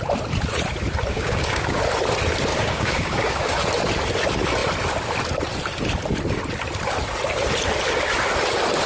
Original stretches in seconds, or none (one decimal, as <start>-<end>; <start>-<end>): 0.0-1.1; 1.8-2.5; 3.6-8.9